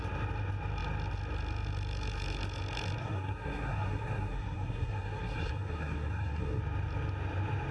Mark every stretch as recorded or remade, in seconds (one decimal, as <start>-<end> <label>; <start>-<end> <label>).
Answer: 0.0-3.0 recorded; 3.0-6.6 remade; 6.6-7.7 recorded